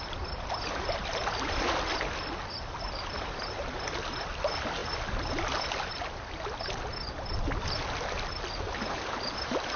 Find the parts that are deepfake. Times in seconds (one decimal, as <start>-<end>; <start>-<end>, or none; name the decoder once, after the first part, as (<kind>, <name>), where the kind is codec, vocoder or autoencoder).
none